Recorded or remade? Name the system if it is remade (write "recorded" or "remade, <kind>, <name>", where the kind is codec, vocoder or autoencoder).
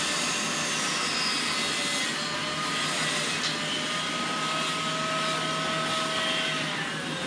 recorded